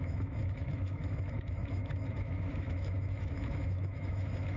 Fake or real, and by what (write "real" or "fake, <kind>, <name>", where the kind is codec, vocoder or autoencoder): fake, autoencoder, DAC-VAE